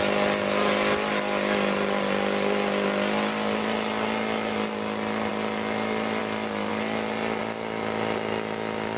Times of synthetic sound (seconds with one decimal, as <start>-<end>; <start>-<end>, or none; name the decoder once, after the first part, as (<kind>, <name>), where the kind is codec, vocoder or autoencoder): none